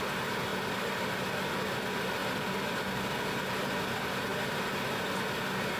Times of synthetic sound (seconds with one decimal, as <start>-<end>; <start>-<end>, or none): none